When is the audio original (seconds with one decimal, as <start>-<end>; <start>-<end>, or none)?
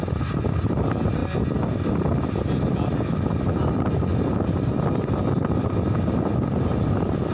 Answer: 0.0-7.3